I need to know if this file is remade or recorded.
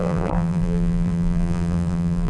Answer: remade